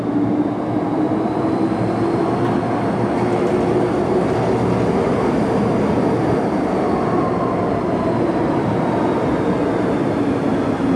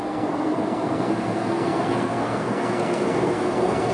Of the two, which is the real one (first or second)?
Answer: first